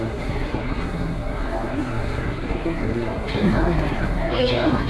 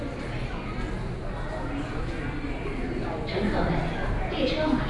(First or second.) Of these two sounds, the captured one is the second